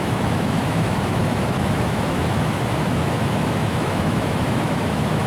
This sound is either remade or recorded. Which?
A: remade